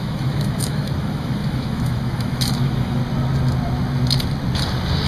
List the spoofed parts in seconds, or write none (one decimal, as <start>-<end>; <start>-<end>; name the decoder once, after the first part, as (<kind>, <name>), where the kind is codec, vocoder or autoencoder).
0.0-3.0 (autoencoder, DAC-VAE)